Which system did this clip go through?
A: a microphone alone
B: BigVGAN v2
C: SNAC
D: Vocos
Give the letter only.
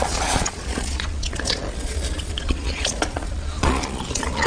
D